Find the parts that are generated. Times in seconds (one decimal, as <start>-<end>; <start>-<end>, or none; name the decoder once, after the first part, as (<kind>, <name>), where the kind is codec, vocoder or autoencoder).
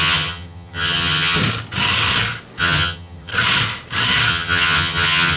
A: 0.0-1.4 (vocoder, HiFi-GAN); 2.6-3.3; 4.3-5.4